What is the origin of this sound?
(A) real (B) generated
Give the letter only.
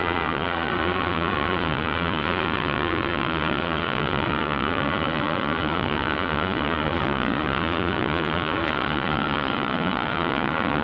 B